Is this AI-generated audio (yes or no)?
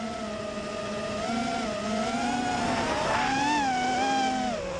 no